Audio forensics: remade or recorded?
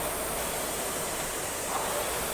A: recorded